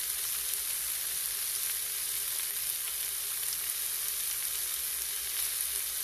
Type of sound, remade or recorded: recorded